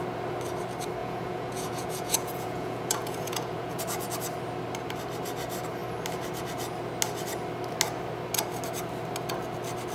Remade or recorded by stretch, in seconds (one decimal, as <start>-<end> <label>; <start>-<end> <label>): 0.0-1.0 recorded; 1.0-3.8 remade; 3.8-9.9 recorded